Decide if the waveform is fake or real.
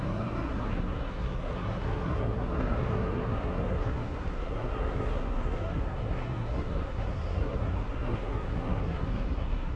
fake